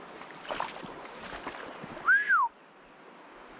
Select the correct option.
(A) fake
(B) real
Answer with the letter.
B